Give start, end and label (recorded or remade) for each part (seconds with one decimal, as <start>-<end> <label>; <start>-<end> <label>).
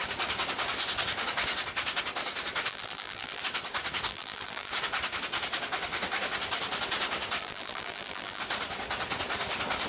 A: 0.0-2.7 recorded; 2.7-3.4 remade; 3.4-4.1 recorded; 4.1-4.7 remade; 4.7-7.4 recorded; 7.4-8.4 remade; 8.4-9.9 recorded